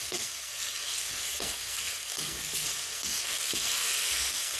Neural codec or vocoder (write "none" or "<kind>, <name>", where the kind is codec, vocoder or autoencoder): codec, SNAC